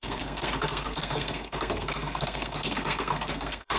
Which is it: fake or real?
fake